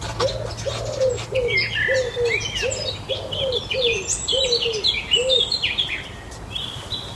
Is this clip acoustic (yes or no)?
yes